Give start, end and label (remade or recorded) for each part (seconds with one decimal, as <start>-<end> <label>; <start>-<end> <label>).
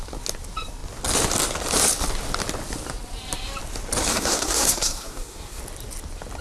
0.0-4.1 recorded; 4.1-5.6 remade; 5.6-6.4 recorded